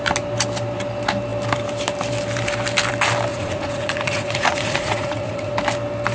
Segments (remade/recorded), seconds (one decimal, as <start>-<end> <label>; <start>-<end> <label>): 0.0-3.3 recorded; 3.3-5.5 remade; 5.5-6.1 recorded